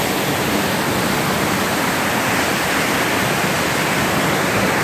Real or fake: real